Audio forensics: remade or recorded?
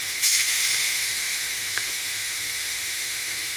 remade